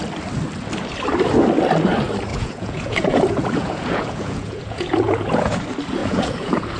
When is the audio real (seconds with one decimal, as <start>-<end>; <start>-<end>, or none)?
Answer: 0.0-2.3; 5.6-6.0